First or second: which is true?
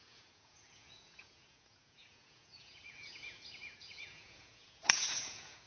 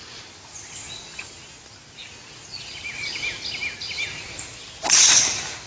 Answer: second